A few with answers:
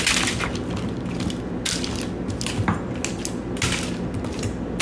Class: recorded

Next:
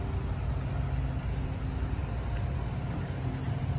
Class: recorded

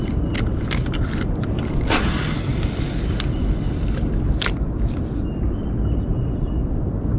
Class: recorded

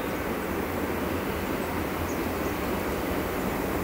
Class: recorded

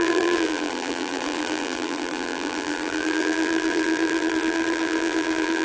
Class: remade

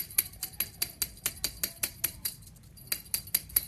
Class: recorded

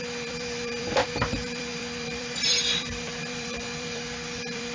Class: remade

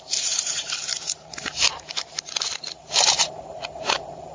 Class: remade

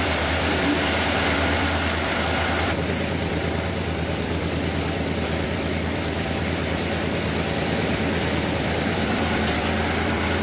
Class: remade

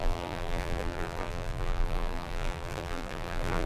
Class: remade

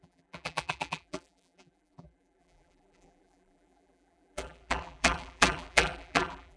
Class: remade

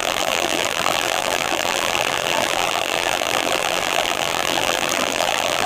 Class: remade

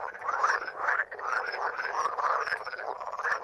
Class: remade